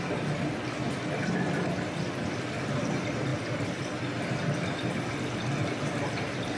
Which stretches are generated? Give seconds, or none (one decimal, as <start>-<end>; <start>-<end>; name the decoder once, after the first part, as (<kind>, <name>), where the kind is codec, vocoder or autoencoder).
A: none